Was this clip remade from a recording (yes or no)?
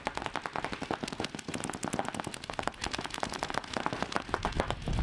no